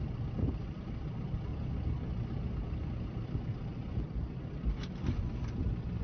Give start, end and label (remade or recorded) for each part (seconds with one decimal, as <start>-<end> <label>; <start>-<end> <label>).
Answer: 0.0-1.5 remade; 1.5-3.1 recorded; 3.1-3.7 remade; 3.7-5.1 recorded; 5.1-6.0 remade